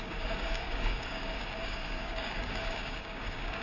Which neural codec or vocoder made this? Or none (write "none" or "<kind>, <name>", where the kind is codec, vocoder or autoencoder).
codec, DAC